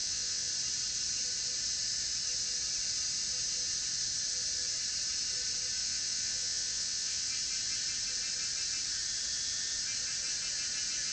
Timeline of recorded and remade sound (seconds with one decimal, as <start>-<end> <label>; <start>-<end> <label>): 0.0-0.5 remade; 0.5-5.8 recorded; 5.8-7.3 remade; 7.3-11.1 recorded